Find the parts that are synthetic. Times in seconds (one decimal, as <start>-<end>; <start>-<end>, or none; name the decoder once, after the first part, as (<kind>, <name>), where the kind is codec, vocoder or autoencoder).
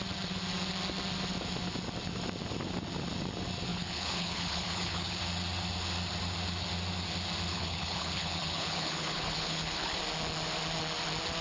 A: 3.7-5.2 (codec, HILCodec); 7.5-10.0